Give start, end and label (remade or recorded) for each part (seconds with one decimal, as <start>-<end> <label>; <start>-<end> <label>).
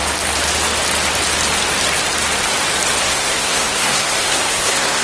0.0-3.0 recorded; 3.0-5.0 remade